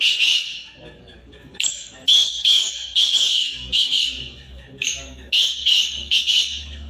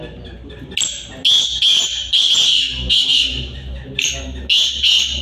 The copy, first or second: first